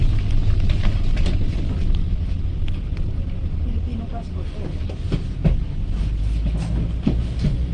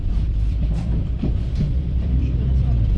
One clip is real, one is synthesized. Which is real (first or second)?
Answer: first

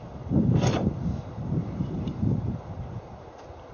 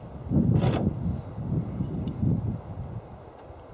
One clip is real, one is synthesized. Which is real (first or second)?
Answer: second